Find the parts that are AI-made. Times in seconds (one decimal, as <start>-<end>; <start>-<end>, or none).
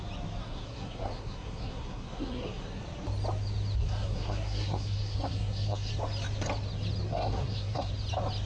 0.4-2.8; 3.8-5.9; 7.1-7.9